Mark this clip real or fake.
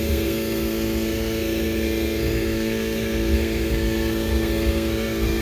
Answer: fake